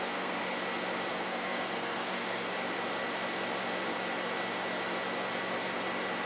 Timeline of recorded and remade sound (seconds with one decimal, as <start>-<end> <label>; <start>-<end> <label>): 0.0-0.4 remade; 0.4-1.1 recorded; 1.1-2.5 remade; 2.5-6.3 recorded